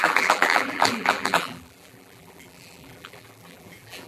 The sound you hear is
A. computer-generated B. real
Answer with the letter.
A